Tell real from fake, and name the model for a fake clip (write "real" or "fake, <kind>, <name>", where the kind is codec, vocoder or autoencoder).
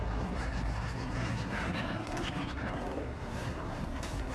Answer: fake, codec, SNAC